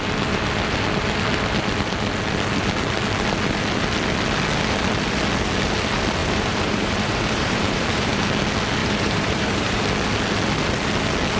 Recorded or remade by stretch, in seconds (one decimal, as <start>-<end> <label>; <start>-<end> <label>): 0.0-6.2 recorded; 6.2-8.2 remade; 8.2-8.8 recorded; 8.8-9.8 remade; 9.8-11.4 recorded